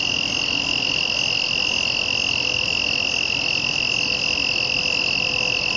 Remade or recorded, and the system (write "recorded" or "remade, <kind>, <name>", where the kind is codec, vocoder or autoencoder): recorded